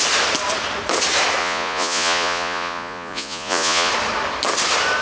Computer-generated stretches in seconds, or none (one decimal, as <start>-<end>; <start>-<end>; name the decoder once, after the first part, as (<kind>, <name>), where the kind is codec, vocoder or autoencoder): 1.4-3.9 (vocoder, Vocos)